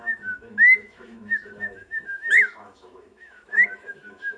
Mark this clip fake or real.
fake